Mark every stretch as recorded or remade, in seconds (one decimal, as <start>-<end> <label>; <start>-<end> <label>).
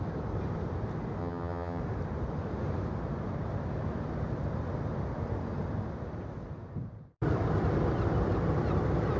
0.0-1.2 recorded; 1.2-1.8 remade; 1.8-9.2 recorded